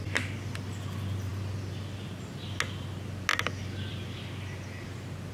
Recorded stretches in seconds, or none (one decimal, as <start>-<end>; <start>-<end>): 0.0-5.3